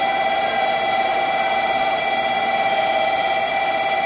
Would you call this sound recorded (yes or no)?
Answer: yes